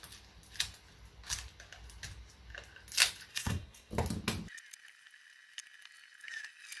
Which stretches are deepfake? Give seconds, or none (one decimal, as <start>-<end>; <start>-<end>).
3.3-3.9